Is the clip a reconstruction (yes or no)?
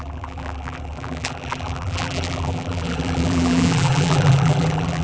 yes